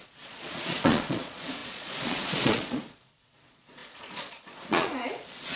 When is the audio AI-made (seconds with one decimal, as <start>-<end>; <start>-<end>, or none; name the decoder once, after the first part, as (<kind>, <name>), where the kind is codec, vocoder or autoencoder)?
0.0-5.6 (vocoder, Vocos)